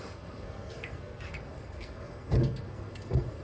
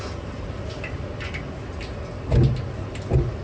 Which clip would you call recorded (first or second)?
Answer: second